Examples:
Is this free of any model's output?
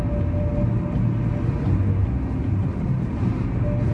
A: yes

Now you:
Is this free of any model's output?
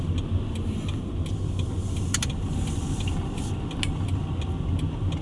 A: yes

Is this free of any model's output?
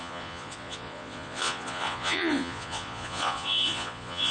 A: no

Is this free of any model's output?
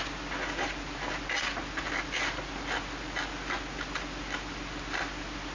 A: yes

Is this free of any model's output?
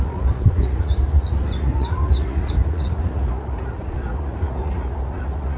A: no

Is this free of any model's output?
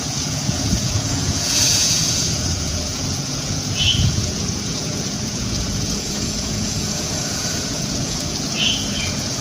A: no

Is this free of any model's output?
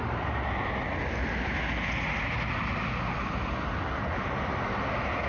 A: yes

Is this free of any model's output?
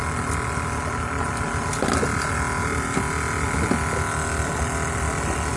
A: yes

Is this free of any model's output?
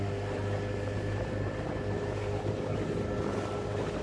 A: yes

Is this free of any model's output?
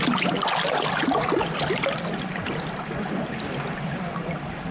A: yes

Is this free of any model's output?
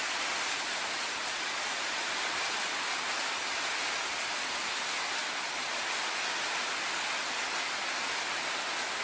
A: yes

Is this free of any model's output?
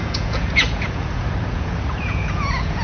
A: no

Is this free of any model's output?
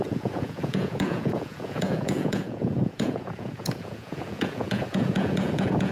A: no